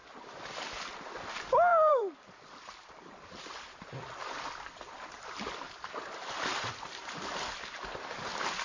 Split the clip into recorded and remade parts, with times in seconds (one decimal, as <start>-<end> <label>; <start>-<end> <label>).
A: 0.0-0.9 remade; 0.9-1.7 recorded; 1.7-6.8 remade; 6.8-8.6 recorded